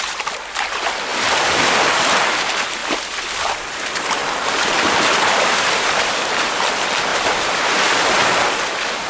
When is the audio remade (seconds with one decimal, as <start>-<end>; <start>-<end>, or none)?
2.8-3.5; 4.2-6.5; 7.1-8.1

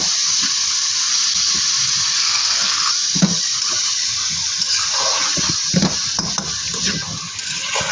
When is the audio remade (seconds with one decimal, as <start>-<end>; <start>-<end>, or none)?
2.2-2.9

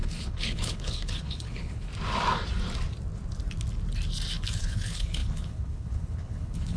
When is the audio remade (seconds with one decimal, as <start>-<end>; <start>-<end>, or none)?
0.0-1.9; 4.6-6.8

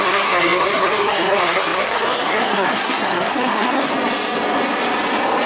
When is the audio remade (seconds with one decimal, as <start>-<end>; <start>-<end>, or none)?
0.0-3.9

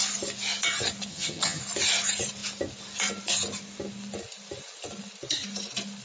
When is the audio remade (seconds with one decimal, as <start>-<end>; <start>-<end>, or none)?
1.1-1.6

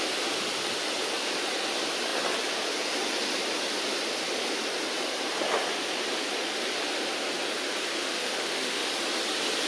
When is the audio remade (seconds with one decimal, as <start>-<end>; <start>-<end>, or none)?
7.9-8.9